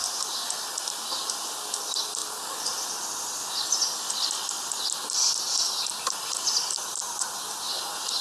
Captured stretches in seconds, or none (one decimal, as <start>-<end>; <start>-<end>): 0.0-8.2